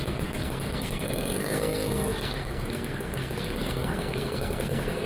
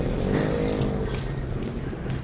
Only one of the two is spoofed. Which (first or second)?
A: first